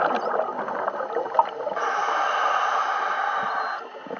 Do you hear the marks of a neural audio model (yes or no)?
no